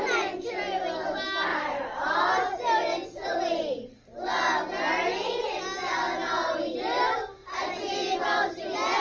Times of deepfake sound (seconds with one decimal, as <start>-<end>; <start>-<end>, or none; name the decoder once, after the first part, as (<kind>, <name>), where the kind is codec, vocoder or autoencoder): 1.5-2.3 (vocoder, BigVGAN v2); 7.4-8.2

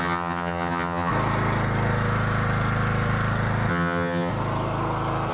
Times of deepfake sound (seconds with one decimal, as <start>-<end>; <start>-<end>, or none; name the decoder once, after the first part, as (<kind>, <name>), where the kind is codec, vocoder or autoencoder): 0.0-1.1 (vocoder, HiFi-GAN); 3.7-4.3